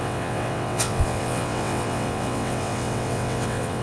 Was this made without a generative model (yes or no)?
no